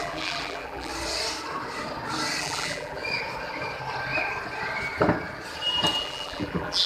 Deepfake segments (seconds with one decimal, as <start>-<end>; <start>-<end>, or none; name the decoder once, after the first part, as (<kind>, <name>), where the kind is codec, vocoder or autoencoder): 0.0-0.9 (vocoder, BigVGAN v2); 2.4-3.0; 6.0-6.9